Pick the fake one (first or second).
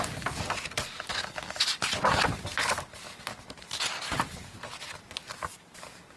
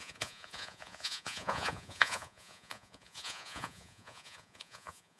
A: second